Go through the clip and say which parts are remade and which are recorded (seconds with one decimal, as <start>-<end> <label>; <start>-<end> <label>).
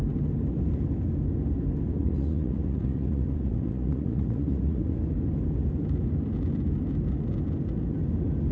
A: 0.0-2.0 recorded; 2.0-5.0 remade; 5.0-8.5 recorded